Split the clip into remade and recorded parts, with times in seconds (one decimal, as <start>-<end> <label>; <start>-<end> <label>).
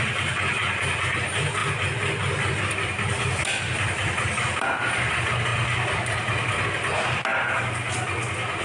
0.0-8.6 recorded